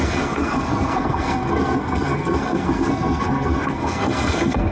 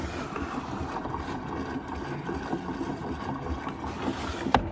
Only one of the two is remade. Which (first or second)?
first